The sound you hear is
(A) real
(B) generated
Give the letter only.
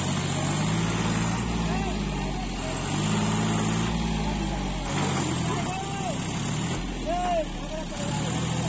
A